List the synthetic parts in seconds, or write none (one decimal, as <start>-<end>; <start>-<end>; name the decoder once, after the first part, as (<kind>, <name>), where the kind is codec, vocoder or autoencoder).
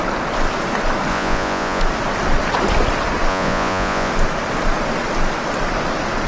1.1-1.8 (vocoder, Vocos); 3.3-4.1